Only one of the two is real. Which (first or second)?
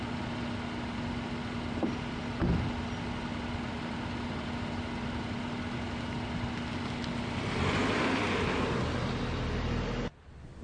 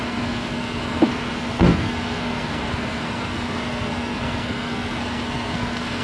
first